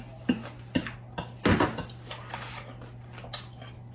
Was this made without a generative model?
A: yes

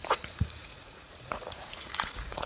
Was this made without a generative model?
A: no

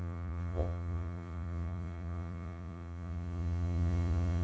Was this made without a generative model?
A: no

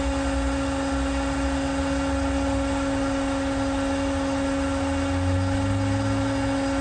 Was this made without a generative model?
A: yes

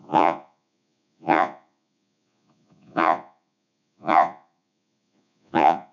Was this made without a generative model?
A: no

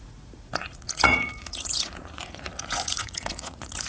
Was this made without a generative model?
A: no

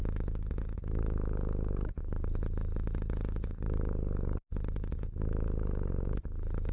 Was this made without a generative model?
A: yes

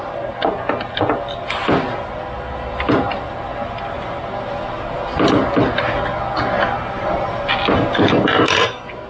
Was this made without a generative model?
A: yes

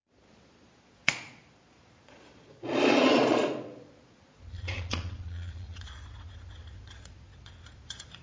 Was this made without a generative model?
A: no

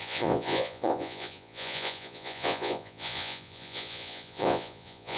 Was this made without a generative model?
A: no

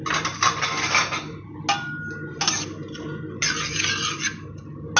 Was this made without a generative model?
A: yes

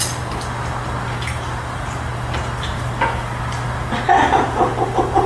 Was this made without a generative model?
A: yes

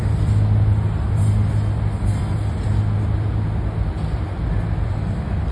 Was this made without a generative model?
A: yes